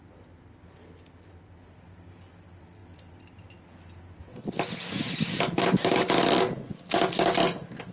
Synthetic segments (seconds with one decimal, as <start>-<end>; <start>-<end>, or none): none

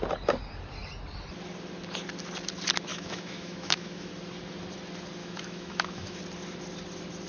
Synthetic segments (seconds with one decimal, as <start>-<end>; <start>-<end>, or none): 2.9-4.1; 5.2-6.2

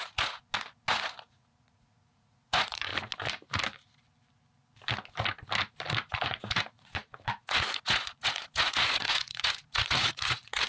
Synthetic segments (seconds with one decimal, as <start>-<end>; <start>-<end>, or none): 0.0-0.4; 0.9-2.9; 6.1-10.7

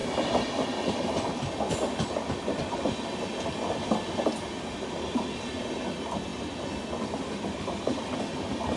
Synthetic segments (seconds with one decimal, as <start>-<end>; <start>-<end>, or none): none

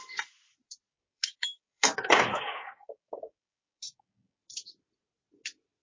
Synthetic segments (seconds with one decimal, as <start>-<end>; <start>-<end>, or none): 0.9-4.4

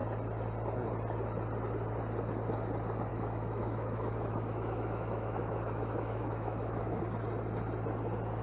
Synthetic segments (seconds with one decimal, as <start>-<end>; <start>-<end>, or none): 3.1-7.0